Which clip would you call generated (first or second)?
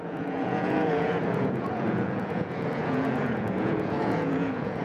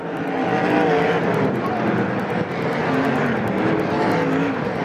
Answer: first